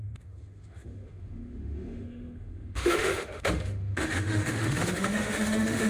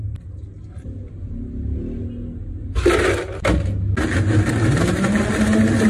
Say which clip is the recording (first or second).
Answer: second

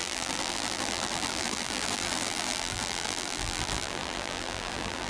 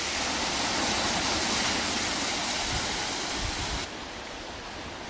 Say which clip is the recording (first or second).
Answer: second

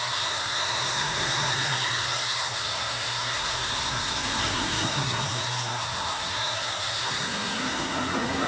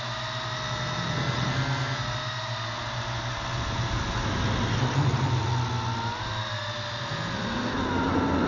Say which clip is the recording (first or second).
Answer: second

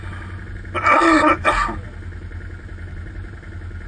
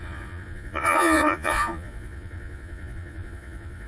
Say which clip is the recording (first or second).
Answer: first